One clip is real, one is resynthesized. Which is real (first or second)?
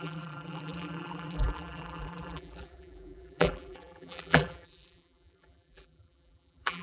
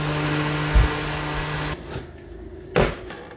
second